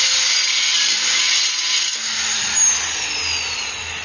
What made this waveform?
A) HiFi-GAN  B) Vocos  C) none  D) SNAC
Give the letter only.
C